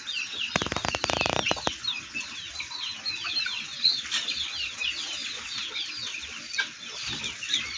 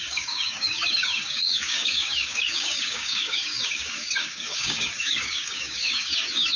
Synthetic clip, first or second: second